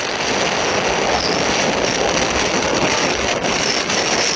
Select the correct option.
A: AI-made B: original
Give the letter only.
B